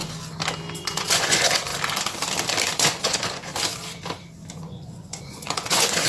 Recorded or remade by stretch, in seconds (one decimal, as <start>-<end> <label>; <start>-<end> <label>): 0.0-0.8 recorded; 0.8-1.7 remade; 1.7-2.6 recorded; 2.6-3.5 remade; 3.5-4.6 recorded; 4.6-6.1 remade